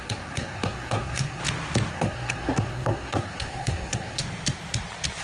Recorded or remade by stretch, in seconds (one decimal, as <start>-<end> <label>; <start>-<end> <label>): 0.0-1.4 remade; 1.4-1.9 recorded; 1.9-4.2 remade; 4.2-5.2 recorded